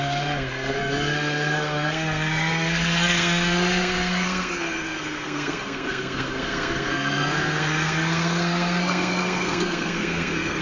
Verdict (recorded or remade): remade